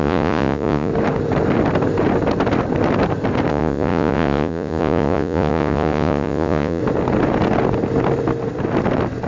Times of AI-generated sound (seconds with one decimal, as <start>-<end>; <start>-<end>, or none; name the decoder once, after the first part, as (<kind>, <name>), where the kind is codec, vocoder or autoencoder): 0.0-0.9 (vocoder, Vocos); 3.5-6.8